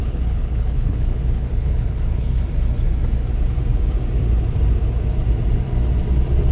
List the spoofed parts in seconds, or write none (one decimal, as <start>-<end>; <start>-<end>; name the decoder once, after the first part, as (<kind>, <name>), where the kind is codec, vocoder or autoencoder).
0.0-2.4 (codec, HILCodec)